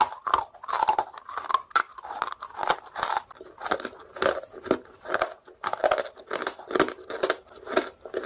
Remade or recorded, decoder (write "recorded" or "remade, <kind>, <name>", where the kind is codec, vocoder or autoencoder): recorded